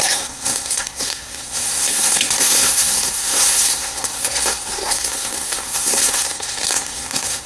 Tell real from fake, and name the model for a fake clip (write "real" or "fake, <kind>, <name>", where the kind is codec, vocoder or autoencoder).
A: fake, codec, SNAC